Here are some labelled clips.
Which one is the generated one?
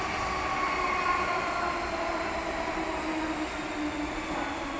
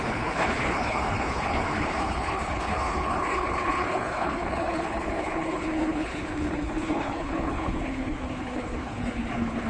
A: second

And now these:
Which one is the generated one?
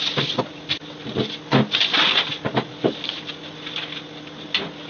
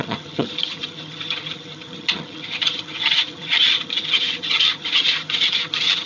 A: second